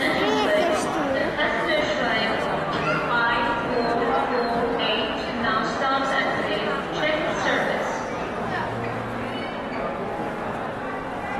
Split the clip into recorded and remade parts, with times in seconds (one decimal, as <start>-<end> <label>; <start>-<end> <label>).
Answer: 0.0-1.2 recorded; 1.2-1.8 remade; 1.8-11.4 recorded